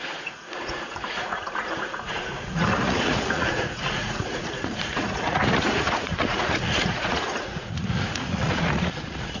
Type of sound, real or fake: fake